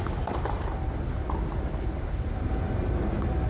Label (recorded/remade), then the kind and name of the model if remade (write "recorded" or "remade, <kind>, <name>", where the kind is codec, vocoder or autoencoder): recorded